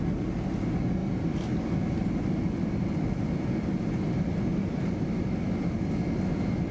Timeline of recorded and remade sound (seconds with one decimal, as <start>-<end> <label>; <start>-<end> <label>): 0.0-6.7 recorded